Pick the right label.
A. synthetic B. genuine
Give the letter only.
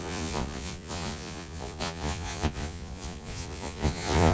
A